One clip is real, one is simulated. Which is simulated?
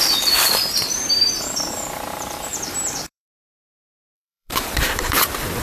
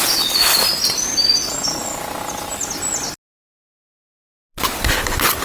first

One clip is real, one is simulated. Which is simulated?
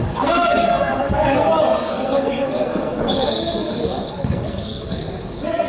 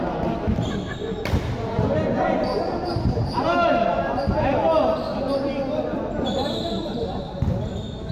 first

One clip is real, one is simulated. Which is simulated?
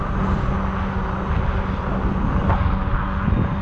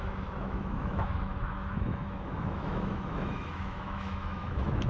second